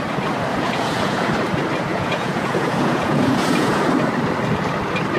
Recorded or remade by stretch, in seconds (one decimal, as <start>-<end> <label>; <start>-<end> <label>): 0.0-0.5 recorded; 0.5-1.3 remade; 1.3-1.9 recorded; 1.9-3.8 remade; 3.8-5.2 recorded